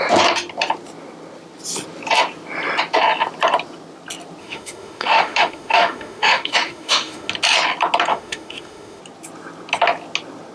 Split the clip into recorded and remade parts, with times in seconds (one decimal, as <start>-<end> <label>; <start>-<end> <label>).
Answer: 0.0-4.4 recorded; 4.4-7.3 remade; 7.3-8.1 recorded; 8.1-9.0 remade; 9.0-10.5 recorded